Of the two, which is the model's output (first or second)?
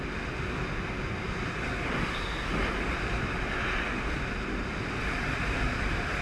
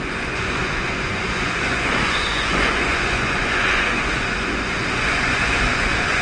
second